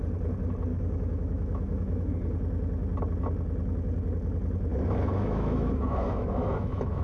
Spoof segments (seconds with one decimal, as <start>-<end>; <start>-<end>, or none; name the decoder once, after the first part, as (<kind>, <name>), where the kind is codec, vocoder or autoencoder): 0.7-2.1 (autoencoder, DAC-VAE); 4.7-7.0